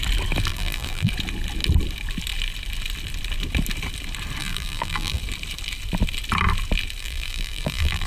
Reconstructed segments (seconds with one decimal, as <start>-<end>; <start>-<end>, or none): 0.5-1.1; 4.4-5.2; 7.0-8.1